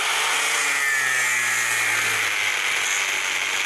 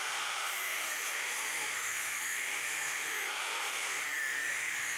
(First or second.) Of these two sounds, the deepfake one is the second